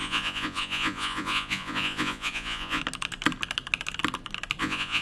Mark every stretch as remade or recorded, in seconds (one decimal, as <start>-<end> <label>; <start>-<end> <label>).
0.0-2.8 remade; 2.8-4.6 recorded; 4.6-5.0 remade